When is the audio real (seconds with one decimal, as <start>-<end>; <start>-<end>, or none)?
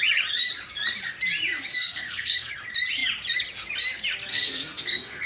0.0-1.7; 2.5-4.3